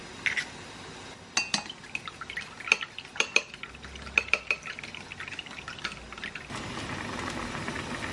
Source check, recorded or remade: recorded